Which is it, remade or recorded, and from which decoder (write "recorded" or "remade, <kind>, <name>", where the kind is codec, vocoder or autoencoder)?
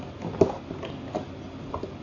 recorded